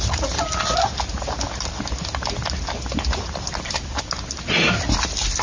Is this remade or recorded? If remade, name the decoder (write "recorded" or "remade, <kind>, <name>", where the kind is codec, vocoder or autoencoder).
recorded